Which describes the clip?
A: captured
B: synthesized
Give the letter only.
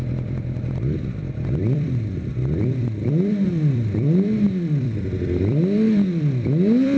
B